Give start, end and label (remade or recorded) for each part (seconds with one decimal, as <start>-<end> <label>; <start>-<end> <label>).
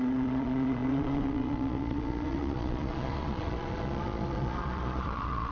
0.0-5.5 remade